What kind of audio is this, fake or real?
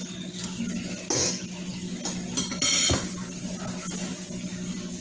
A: real